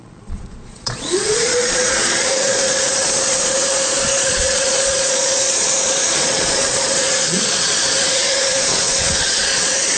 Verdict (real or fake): fake